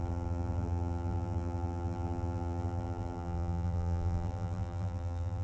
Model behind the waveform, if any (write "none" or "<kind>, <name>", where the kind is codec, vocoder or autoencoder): vocoder, BigVGAN v2